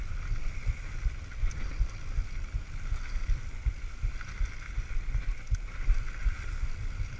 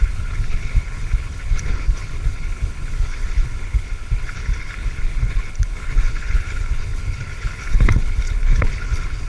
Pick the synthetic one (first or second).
second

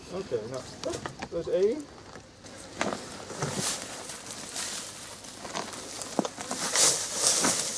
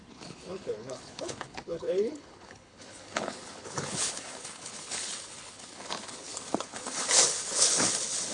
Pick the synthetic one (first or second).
second